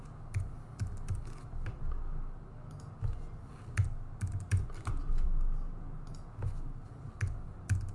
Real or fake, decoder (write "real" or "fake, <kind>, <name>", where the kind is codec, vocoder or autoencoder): real